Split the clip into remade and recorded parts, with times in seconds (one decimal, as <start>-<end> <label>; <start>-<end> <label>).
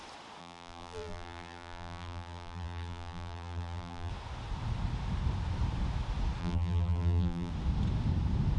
0.0-0.4 recorded; 0.4-4.1 remade; 4.1-6.4 recorded; 6.4-7.5 remade; 7.5-8.6 recorded